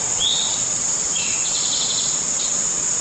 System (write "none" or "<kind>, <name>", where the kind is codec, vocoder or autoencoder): vocoder, WaveNeXt